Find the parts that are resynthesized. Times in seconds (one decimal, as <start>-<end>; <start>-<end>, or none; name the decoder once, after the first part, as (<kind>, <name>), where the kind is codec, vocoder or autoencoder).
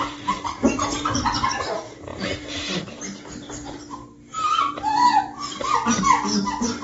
0.9-1.7 (vocoder, BigVGAN v2); 2.1-6.0